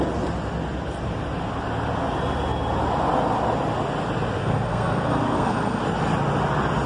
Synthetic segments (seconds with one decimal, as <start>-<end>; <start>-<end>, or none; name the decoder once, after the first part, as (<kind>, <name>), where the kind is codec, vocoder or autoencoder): 4.4-5.8 (codec, SNAC)